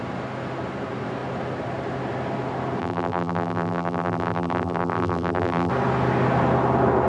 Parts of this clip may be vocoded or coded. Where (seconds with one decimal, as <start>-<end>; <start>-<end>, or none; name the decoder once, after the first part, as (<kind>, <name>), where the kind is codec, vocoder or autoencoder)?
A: 2.8-5.7 (vocoder, BigVGAN v2)